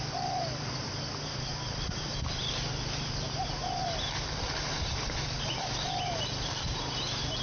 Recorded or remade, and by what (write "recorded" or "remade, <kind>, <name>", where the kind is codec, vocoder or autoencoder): recorded